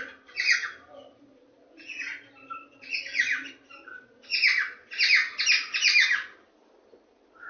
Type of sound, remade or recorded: recorded